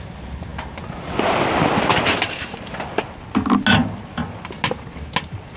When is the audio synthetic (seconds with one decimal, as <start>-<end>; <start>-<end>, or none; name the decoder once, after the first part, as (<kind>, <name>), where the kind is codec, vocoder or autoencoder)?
none